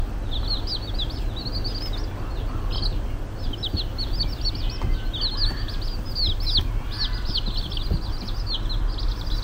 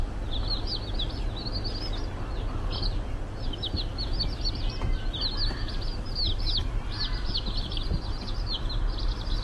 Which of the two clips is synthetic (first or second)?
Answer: second